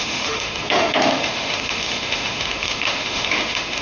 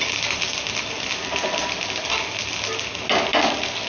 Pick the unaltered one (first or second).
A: second